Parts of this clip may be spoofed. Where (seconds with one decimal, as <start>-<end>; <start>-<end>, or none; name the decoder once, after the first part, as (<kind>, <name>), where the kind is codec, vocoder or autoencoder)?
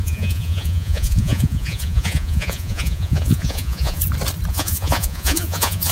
0.0-4.0 (vocoder, Vocos); 4.5-5.9